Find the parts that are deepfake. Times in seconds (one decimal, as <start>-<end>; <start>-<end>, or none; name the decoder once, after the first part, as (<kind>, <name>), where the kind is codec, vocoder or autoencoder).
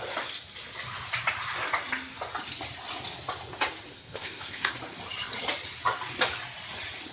3.9-4.7 (codec, ZipCodec)